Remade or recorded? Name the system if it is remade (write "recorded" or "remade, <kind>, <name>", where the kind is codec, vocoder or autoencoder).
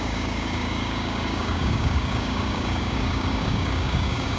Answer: remade, codec, DAC